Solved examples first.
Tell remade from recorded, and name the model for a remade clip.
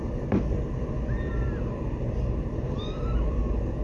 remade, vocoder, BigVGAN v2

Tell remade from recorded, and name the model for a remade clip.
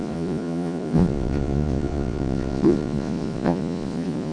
remade, vocoder, Vocos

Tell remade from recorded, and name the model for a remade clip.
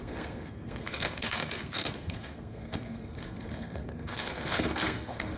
remade, codec, SNAC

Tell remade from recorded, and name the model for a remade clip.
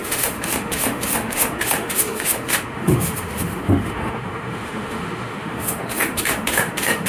remade, autoencoder, DAC-VAE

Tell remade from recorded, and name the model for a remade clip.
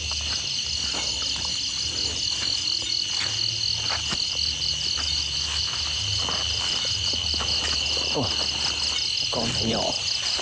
recorded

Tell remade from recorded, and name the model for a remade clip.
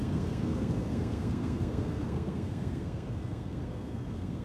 remade, codec, SNAC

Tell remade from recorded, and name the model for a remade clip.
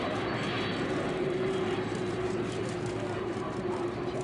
remade, vocoder, BigVGAN v2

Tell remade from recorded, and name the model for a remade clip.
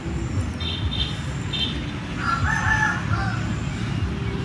recorded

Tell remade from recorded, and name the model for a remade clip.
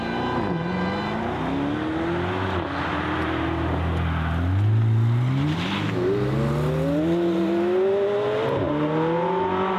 recorded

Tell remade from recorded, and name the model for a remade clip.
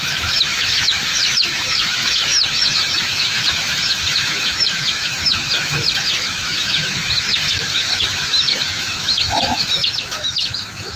remade, autoencoder, DAC-VAE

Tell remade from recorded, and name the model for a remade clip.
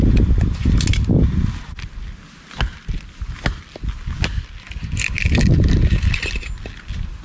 recorded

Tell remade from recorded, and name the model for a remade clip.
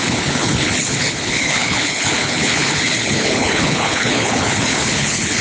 remade, codec, HILCodec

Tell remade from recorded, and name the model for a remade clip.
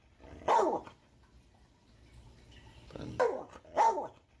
recorded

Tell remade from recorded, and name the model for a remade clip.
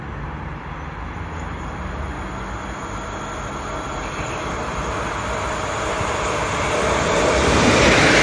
recorded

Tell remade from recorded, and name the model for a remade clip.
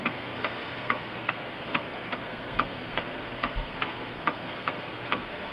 remade, codec, SNAC